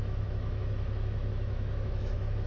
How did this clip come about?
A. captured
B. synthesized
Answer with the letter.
B